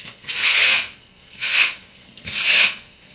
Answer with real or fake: fake